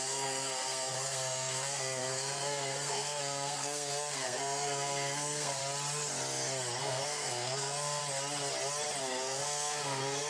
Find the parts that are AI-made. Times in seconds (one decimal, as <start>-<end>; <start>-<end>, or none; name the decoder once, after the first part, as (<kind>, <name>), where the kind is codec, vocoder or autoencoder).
0.0-5.6 (codec, SNAC); 6.8-8.0; 9.0-10.3